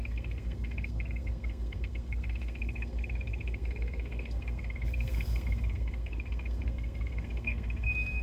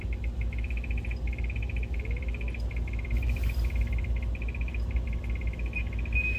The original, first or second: second